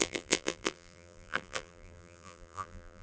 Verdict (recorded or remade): remade